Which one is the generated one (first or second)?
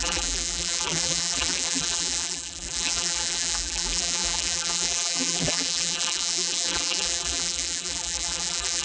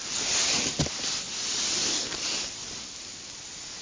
first